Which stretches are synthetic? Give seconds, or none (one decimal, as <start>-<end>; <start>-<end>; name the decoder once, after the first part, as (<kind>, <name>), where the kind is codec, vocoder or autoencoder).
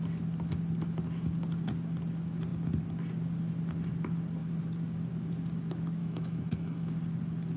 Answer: 6.0-6.9 (autoencoder, DAC-VAE)